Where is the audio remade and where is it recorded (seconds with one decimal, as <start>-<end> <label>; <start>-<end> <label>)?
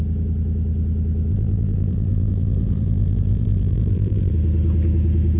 0.0-1.3 recorded; 1.3-4.3 remade; 4.3-5.4 recorded